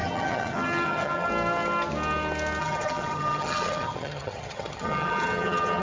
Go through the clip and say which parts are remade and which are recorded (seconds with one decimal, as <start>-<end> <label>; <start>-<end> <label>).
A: 0.0-1.3 remade; 1.3-2.6 recorded; 2.6-5.8 remade